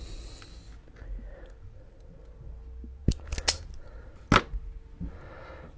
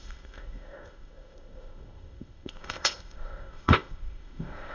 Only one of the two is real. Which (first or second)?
first